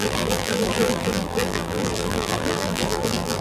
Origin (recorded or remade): remade